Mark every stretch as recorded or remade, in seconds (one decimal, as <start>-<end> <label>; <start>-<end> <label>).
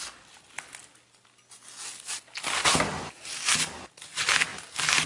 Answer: 0.0-5.1 recorded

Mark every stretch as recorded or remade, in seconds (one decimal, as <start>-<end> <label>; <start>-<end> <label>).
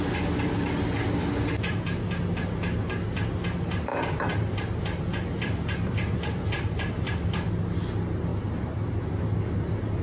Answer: 0.0-3.9 recorded; 3.9-7.5 remade; 7.5-8.3 recorded; 8.3-8.9 remade; 8.9-10.0 recorded